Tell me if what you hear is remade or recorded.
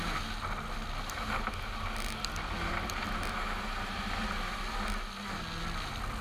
recorded